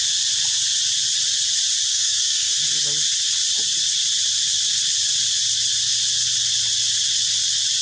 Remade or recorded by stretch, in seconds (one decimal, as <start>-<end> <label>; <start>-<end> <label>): 0.0-1.9 recorded; 1.9-2.5 remade; 2.5-7.8 recorded